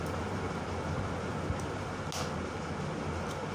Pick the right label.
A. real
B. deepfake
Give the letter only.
A